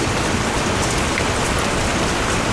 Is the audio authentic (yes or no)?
yes